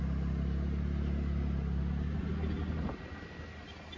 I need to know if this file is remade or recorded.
recorded